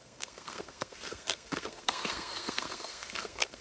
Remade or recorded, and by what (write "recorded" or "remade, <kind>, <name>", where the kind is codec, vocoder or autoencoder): remade, codec, SNAC